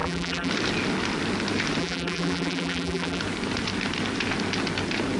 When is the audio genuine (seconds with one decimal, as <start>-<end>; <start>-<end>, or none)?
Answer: 0.5-1.8; 3.2-5.2